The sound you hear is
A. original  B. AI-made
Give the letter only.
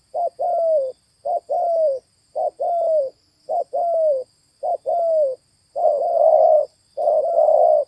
A